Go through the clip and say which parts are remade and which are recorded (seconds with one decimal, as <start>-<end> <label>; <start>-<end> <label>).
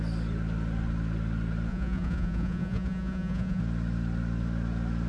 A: 0.0-1.7 recorded; 1.7-3.6 remade; 3.6-5.1 recorded